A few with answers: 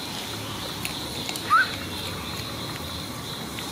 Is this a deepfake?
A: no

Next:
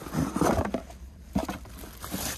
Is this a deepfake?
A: yes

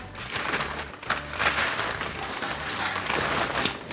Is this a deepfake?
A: yes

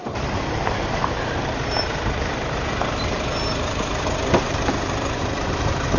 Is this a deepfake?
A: yes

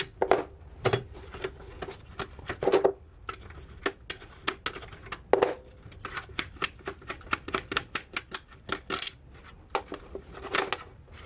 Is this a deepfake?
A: no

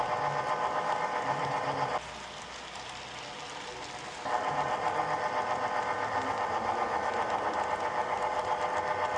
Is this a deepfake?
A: no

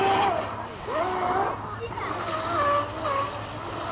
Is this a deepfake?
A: no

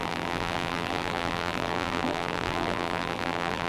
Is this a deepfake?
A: yes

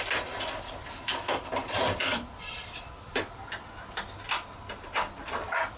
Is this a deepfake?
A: yes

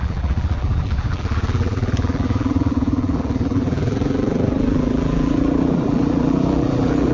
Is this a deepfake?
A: yes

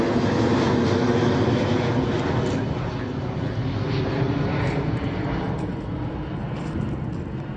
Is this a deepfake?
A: no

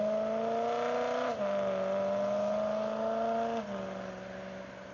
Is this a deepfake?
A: no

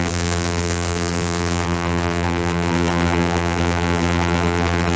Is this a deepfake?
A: yes